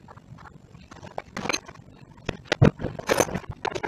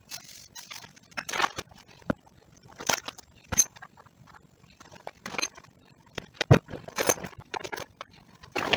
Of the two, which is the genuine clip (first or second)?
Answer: first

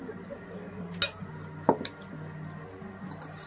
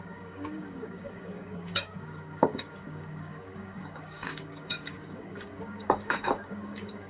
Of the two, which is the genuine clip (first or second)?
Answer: first